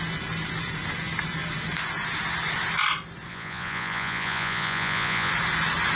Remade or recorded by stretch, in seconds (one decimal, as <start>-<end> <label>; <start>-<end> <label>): 0.0-3.3 recorded; 3.3-5.3 remade; 5.3-6.0 recorded